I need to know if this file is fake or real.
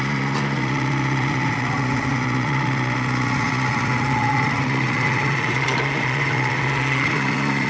fake